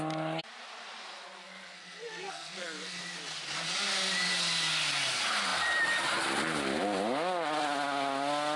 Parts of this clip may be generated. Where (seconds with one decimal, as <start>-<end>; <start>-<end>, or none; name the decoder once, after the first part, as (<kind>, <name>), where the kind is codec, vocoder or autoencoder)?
1.4-3.0 (codec, SNAC)